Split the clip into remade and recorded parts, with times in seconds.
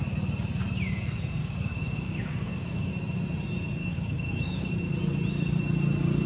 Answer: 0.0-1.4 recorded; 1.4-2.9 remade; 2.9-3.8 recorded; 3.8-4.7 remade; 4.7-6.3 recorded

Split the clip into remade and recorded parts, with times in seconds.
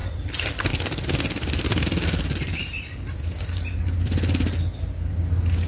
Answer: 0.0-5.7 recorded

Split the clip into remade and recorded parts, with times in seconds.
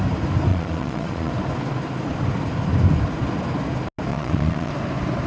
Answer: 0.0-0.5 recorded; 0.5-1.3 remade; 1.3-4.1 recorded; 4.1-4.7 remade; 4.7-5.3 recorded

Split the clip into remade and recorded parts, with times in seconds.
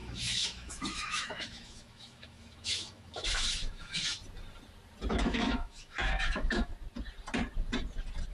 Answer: 0.0-4.2 remade; 4.2-5.1 recorded; 5.1-6.7 remade; 6.7-8.3 recorded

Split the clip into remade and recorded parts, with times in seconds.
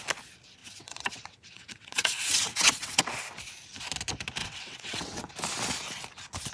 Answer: 0.0-0.6 recorded; 0.6-3.0 remade; 3.0-4.4 recorded; 4.4-5.3 remade; 5.3-6.5 recorded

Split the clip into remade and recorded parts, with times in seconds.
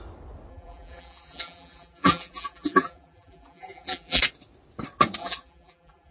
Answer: 0.0-0.5 recorded; 0.5-4.2 remade; 4.2-5.2 recorded; 5.2-6.1 remade